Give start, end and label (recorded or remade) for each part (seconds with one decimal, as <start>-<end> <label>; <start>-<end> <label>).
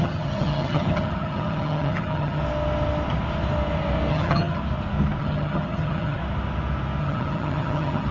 0.0-2.4 remade; 2.4-4.1 recorded; 4.1-4.6 remade; 4.6-5.2 recorded; 5.2-6.2 remade; 6.2-7.0 recorded; 7.0-8.1 remade